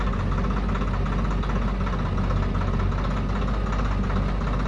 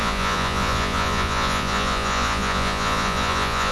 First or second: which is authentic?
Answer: first